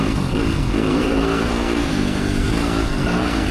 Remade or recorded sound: remade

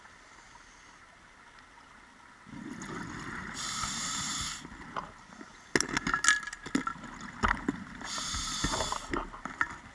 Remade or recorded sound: recorded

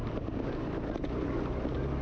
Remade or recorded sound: recorded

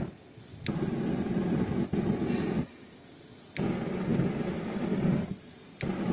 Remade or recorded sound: recorded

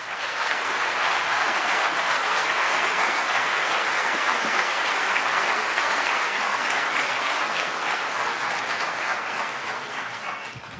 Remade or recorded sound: remade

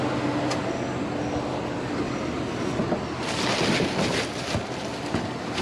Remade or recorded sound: recorded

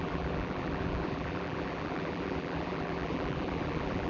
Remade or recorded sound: remade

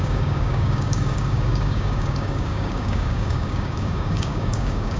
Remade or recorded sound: remade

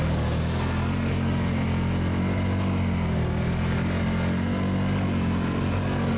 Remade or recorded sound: recorded